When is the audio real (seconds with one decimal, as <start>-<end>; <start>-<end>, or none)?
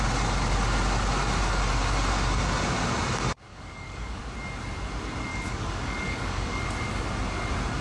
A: 0.0-3.5; 4.2-5.3; 6.6-7.8